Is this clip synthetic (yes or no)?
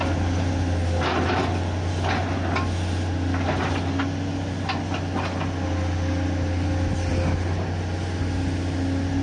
no